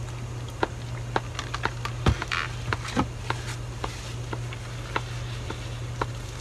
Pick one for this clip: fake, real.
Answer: real